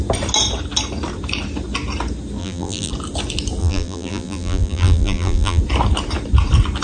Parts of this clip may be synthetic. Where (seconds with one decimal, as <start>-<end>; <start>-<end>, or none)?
2.4-2.9; 3.6-5.6